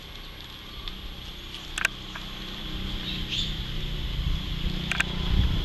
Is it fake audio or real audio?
real